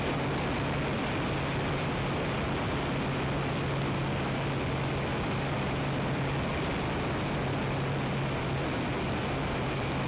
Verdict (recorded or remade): recorded